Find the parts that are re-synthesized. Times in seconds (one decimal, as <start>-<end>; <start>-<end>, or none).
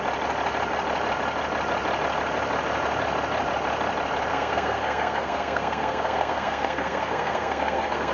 4.3-8.1